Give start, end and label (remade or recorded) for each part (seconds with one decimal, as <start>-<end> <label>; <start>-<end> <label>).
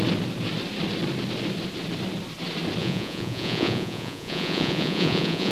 0.0-2.8 recorded; 2.8-5.5 remade